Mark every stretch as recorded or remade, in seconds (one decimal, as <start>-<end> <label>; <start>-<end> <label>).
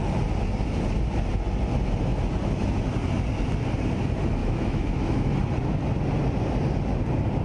0.0-4.4 recorded; 4.4-5.3 remade; 5.3-7.4 recorded